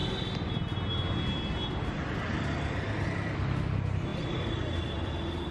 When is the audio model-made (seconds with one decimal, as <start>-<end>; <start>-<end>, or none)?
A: none